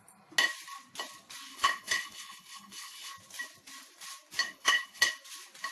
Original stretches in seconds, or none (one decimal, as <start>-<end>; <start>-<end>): 0.0-1.5; 3.1-4.4; 5.1-5.7

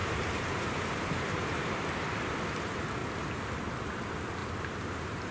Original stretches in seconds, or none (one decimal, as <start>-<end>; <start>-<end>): 1.7-4.4

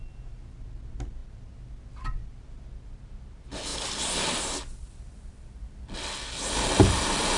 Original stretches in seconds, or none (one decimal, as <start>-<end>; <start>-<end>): 0.0-7.4

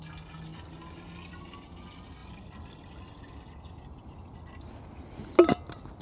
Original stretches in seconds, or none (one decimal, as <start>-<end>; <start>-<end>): 0.0-6.0

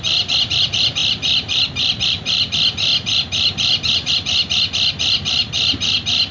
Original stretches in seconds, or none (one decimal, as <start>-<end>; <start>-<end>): 0.0-6.3

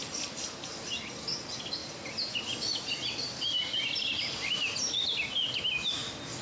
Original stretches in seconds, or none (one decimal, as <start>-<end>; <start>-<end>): 1.3-1.8; 5.6-6.4

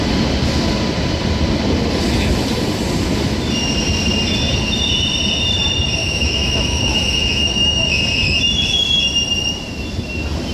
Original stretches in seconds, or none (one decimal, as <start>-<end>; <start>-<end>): 0.0-6.0; 8.0-10.5